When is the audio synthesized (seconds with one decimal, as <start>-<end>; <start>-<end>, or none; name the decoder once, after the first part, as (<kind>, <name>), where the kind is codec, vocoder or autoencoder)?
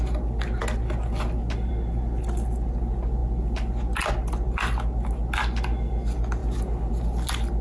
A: none